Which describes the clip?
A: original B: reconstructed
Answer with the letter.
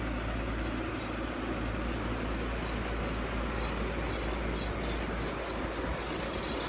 A